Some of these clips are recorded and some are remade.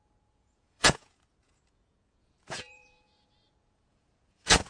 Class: remade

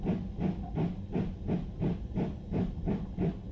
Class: recorded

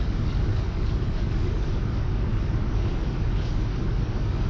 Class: remade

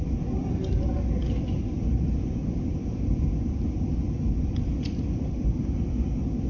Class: recorded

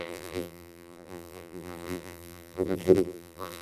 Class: remade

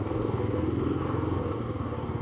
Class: remade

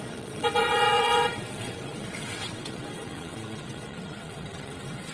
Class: remade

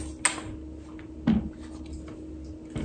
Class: recorded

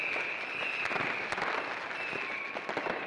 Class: recorded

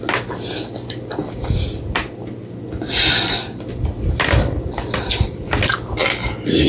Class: recorded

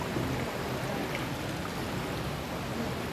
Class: recorded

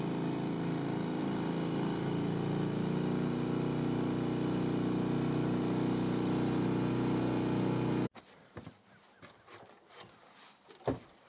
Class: recorded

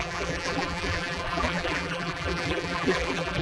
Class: remade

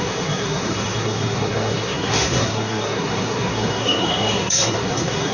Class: remade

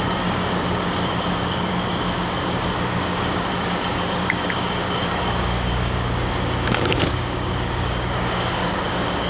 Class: remade